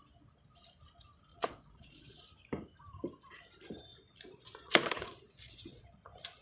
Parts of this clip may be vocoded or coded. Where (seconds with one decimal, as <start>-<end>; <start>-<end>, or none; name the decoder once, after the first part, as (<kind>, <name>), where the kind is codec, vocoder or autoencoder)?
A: 1.3-2.2 (vocoder, Vocos); 3.9-6.0